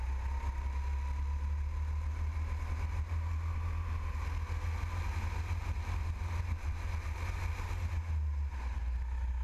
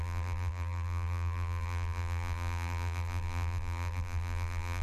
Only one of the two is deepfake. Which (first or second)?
second